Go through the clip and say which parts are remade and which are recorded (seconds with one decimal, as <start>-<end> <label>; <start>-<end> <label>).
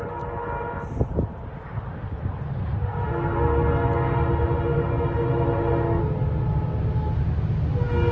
0.0-8.1 recorded